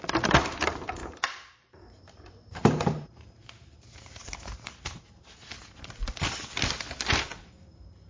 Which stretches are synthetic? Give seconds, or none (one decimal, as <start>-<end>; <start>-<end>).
1.0-5.9; 7.3-8.1